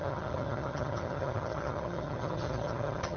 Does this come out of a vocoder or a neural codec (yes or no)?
yes